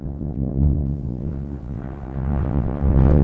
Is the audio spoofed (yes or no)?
yes